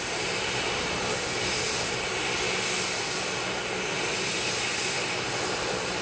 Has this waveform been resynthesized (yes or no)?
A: no